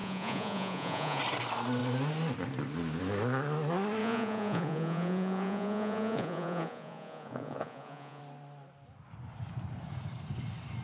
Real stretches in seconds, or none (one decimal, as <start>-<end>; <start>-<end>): 1.2-4.0; 8.2-10.8